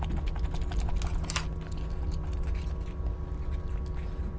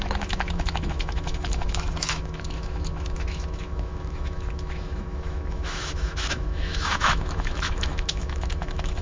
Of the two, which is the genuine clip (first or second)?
first